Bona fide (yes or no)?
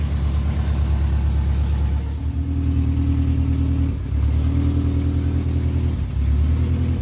yes